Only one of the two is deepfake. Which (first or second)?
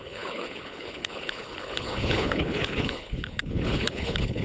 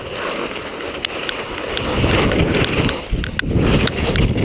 first